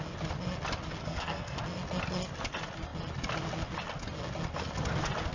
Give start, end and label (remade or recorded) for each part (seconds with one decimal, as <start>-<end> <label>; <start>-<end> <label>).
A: 0.0-1.0 recorded; 1.0-1.6 remade; 1.6-5.3 recorded